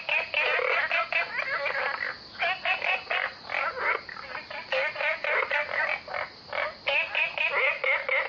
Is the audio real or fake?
real